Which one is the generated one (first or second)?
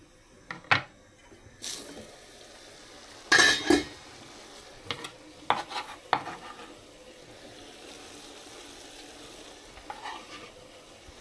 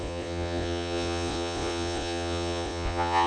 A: second